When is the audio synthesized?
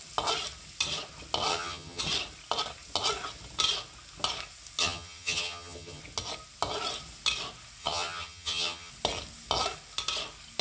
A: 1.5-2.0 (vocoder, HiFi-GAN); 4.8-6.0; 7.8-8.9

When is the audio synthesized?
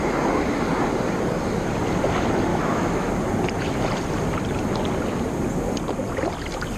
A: 2.5-3.1 (autoencoder, DAC-VAE)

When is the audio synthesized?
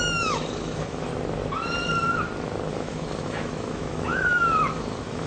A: 0.0-1.1 (autoencoder, DAC-VAE); 2.7-5.3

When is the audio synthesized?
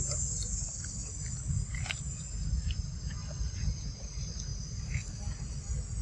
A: 4.5-5.4 (vocoder, BigVGAN v2)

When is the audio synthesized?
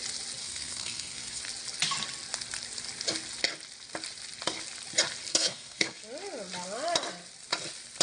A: 0.4-1.4 (codec, SNAC); 5.3-6.0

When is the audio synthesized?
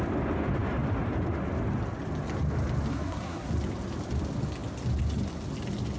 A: 2.9-3.5 (codec, SNAC)